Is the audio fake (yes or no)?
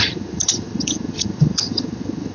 yes